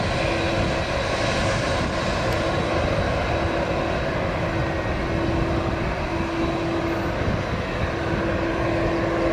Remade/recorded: recorded